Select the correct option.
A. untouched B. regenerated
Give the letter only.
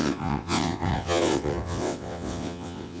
B